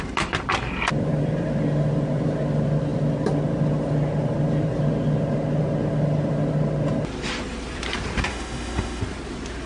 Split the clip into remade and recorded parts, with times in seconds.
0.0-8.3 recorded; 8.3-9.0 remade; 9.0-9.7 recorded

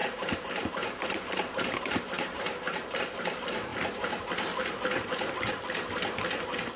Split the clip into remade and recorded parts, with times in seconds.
0.0-3.0 remade; 3.0-6.8 recorded